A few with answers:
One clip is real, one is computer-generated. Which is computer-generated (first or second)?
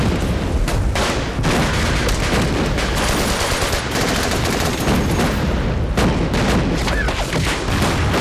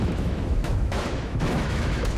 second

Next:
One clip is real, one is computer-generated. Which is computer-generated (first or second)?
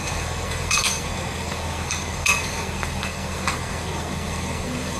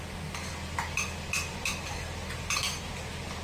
first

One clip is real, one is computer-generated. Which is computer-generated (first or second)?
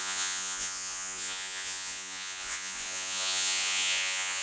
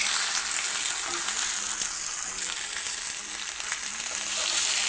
first